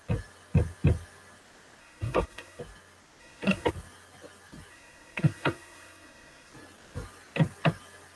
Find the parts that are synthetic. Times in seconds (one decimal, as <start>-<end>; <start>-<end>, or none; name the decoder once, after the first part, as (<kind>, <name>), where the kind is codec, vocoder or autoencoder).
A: 1.8-2.6 (codec, SNAC); 3.2-3.7; 4.7-6.5